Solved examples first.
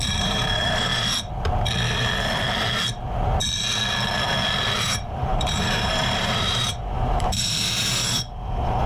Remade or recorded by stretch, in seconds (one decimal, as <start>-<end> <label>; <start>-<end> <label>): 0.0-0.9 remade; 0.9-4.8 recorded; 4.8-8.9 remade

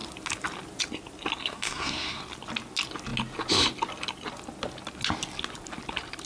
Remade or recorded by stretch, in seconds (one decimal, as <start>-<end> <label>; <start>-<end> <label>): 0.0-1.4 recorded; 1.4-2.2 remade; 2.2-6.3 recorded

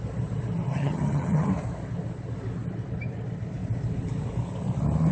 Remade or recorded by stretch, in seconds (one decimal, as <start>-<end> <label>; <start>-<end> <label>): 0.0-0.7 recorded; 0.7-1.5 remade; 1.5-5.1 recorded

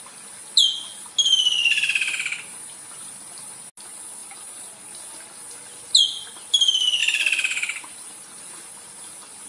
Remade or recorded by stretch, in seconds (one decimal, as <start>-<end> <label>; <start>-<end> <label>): 0.0-4.2 recorded; 4.2-4.8 remade; 4.8-7.0 recorded; 7.0-8.7 remade; 8.7-9.5 recorded

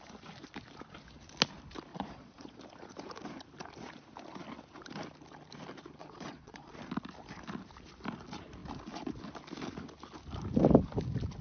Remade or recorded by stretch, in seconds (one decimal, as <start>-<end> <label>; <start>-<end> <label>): 0.0-1.9 recorded; 1.9-2.6 remade; 2.6-6.0 recorded; 6.0-6.7 remade; 6.7-11.4 recorded

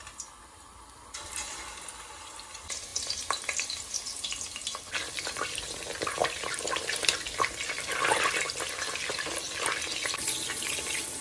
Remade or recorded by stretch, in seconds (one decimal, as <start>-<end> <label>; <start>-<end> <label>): 0.0-11.2 recorded